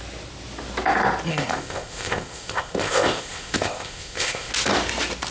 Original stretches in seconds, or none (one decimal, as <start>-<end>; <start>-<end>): 0.0-1.3; 4.5-5.3